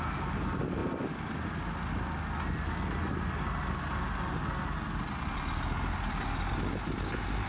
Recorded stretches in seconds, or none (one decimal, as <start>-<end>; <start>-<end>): 0.0-7.5